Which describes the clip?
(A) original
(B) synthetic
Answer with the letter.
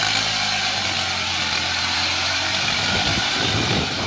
A